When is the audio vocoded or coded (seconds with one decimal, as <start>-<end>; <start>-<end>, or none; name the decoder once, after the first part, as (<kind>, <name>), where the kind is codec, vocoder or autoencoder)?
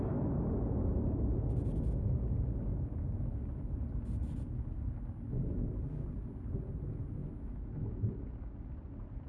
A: none